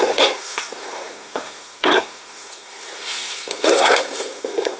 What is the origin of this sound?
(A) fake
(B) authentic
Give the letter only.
A